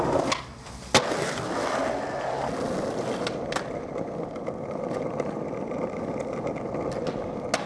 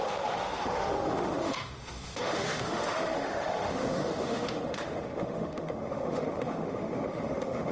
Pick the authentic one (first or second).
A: first